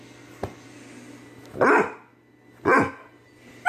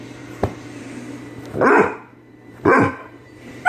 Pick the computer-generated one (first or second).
second